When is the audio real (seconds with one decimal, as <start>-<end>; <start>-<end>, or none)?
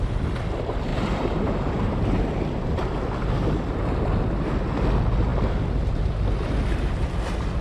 0.0-0.9; 2.2-7.6